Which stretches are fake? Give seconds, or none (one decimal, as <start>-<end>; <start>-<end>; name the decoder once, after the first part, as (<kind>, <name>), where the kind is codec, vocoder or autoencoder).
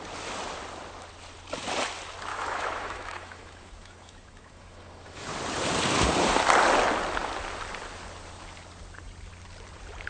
2.3-5.3 (autoencoder, DAC-VAE)